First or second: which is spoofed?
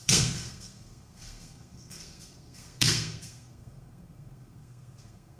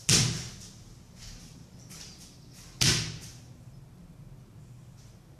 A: first